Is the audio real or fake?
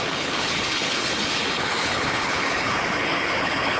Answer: fake